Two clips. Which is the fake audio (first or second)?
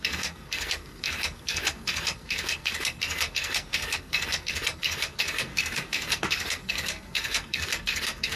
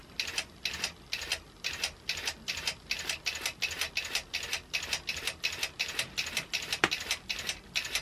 first